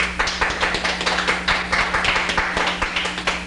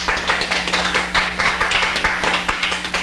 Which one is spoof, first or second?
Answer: second